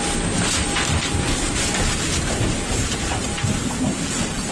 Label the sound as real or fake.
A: real